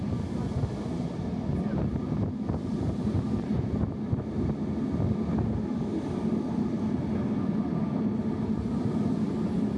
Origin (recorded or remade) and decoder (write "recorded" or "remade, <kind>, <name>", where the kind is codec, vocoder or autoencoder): recorded